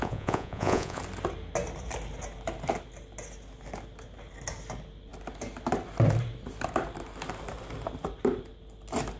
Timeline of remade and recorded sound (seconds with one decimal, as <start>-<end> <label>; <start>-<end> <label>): 0.0-1.0 remade; 1.0-9.2 recorded